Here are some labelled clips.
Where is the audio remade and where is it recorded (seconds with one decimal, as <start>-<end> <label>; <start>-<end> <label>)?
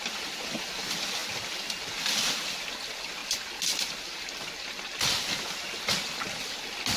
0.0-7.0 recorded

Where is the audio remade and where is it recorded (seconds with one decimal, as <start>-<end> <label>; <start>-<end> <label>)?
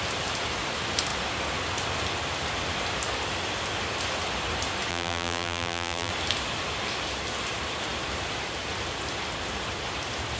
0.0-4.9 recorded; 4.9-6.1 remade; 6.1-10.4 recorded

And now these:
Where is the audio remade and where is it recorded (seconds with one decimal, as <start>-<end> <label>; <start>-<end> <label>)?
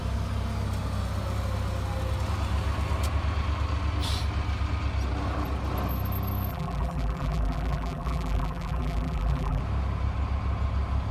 0.0-6.5 recorded; 6.5-9.6 remade; 9.6-11.1 recorded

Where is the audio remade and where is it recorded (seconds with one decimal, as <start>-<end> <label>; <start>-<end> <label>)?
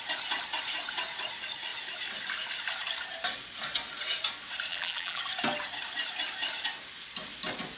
0.0-4.7 recorded; 4.7-5.2 remade; 5.2-7.8 recorded